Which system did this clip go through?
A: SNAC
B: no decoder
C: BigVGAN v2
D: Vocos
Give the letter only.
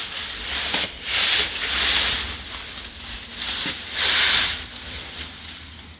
B